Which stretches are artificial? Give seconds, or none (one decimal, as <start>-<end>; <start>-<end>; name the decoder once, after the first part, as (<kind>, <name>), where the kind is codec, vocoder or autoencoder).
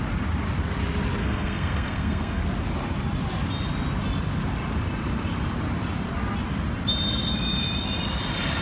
1.2-2.4 (codec, SNAC)